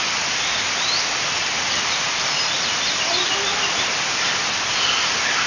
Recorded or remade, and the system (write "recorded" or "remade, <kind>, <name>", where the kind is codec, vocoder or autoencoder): remade, vocoder, BigVGAN v2